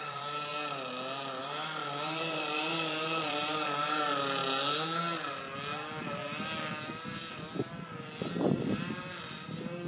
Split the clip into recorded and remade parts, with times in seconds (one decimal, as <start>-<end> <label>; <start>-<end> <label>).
0.0-0.5 remade; 0.5-1.4 recorded; 1.4-4.4 remade; 4.4-8.6 recorded; 8.6-9.9 remade